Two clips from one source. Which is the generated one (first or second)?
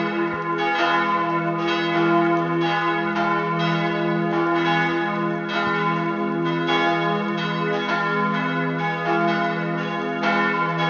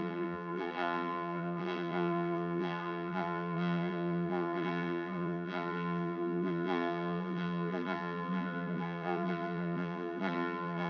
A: second